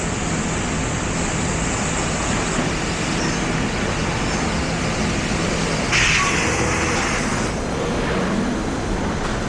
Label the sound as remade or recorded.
recorded